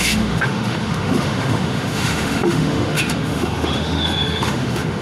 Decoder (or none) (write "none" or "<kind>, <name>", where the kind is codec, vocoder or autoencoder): autoencoder, DAC-VAE